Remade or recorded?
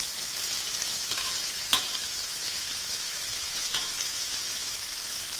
remade